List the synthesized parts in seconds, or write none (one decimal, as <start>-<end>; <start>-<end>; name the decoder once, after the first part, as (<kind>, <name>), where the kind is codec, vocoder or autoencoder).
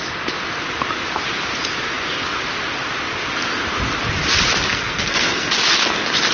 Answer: 4.7-5.5 (codec, SNAC)